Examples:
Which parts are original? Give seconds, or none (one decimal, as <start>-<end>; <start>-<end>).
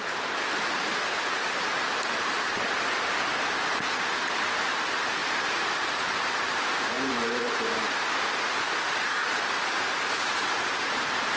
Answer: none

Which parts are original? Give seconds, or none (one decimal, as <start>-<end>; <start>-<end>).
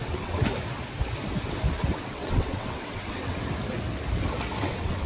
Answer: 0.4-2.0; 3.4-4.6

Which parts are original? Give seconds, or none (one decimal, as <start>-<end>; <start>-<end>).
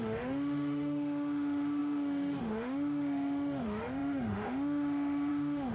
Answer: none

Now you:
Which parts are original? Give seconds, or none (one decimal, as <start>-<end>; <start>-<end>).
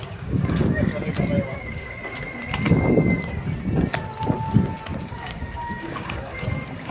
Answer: 0.9-1.5; 2.0-5.0